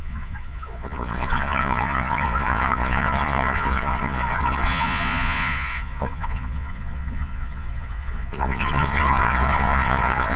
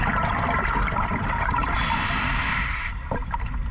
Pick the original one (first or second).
second